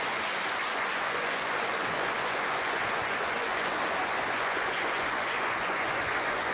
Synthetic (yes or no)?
yes